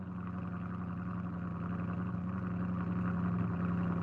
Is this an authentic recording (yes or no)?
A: yes